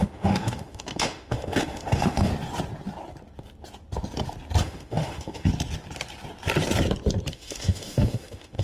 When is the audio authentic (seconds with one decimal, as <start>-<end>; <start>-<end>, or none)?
2.3-4.6; 5.5-7.3